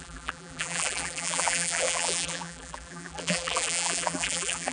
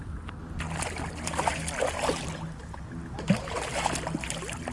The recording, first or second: second